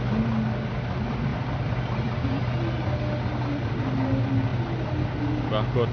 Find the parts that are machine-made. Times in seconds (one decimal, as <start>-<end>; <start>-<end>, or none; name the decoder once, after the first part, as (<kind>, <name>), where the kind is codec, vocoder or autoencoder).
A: 1.3-2.4 (vocoder, BigVGAN v2)